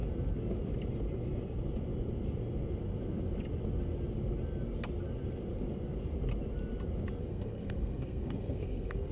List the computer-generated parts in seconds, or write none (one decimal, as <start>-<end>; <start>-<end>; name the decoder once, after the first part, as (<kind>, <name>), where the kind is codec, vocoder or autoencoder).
7.2-9.1 (codec, SNAC)